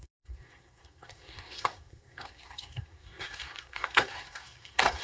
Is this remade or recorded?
remade